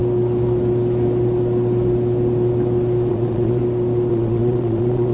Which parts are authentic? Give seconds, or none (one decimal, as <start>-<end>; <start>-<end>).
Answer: 0.0-3.1; 3.6-4.1